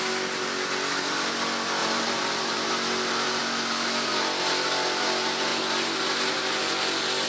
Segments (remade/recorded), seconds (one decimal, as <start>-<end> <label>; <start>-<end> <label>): 0.0-1.8 recorded; 1.8-2.7 remade; 2.7-7.3 recorded